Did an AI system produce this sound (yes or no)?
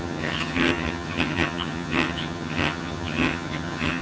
yes